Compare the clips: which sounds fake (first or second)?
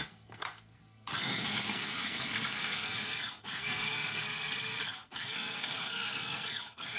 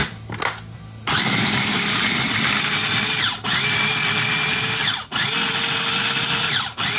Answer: first